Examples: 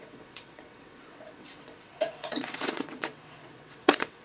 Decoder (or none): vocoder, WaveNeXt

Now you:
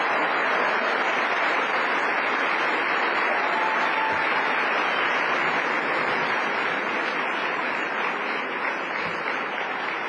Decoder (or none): none